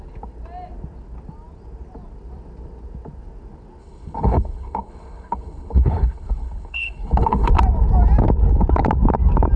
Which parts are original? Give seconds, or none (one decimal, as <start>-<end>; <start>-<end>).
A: 0.0-3.8; 7.5-9.6